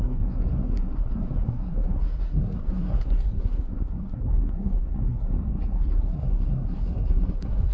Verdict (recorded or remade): remade